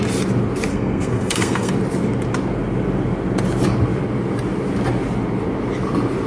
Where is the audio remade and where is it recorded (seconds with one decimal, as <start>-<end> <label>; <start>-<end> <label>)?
0.0-0.7 recorded; 0.7-1.7 remade; 1.7-6.3 recorded